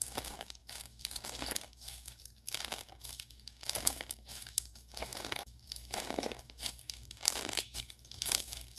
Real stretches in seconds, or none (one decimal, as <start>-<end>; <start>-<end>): none